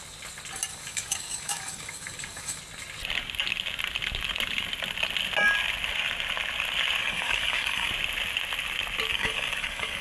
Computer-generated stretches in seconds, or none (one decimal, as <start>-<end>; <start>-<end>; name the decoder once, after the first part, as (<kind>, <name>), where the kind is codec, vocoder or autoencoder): 0.7-2.6 (codec, DAC); 7.0-7.9; 9.1-10.0